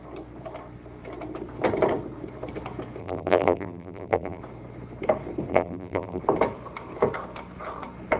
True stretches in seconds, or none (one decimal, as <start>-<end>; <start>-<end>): 0.0-3.0; 4.4-5.5; 6.2-8.2